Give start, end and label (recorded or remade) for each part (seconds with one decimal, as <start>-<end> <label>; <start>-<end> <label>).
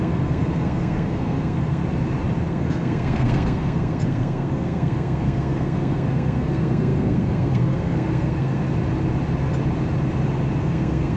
0.0-1.8 remade; 1.8-2.5 recorded; 2.5-8.6 remade; 8.6-10.6 recorded; 10.6-11.2 remade